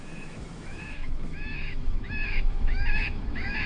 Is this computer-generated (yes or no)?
yes